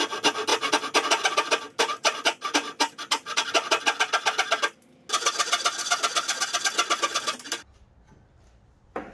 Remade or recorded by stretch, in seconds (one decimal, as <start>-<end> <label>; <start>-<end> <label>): 0.0-9.1 recorded

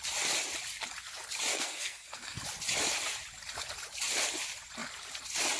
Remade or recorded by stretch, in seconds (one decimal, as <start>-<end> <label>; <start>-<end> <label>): 0.0-1.5 recorded; 1.5-2.4 remade; 2.4-5.6 recorded

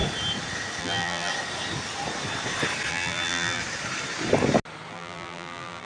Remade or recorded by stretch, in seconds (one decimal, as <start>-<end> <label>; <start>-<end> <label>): 0.0-0.8 recorded; 0.8-1.3 remade; 1.3-2.9 recorded; 2.9-3.6 remade; 3.6-4.9 recorded; 4.9-5.9 remade

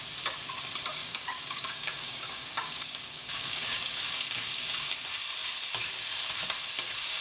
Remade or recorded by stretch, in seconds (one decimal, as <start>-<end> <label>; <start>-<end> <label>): 0.0-1.0 recorded; 1.0-4.0 remade; 4.0-7.2 recorded